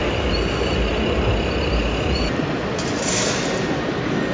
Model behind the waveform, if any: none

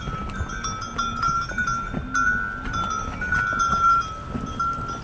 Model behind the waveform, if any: none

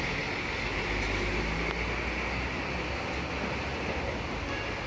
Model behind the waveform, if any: none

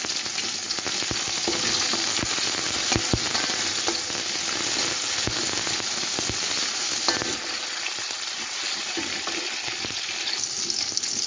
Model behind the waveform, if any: none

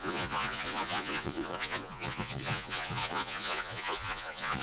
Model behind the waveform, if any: vocoder, Vocos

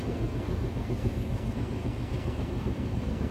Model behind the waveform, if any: codec, SNAC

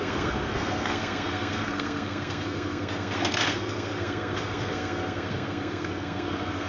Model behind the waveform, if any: codec, SNAC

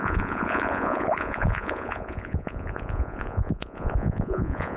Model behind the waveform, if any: vocoder, Vocos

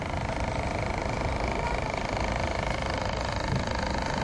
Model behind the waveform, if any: vocoder, BigVGAN v2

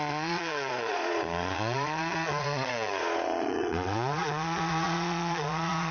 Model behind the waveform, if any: vocoder, Vocos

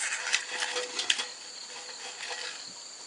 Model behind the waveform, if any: none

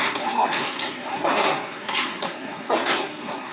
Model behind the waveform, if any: codec, SNAC